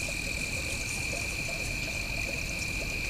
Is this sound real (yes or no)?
yes